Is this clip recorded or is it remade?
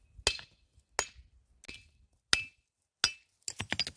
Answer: recorded